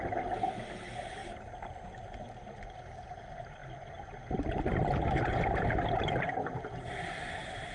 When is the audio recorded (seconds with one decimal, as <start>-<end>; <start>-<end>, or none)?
0.0-7.7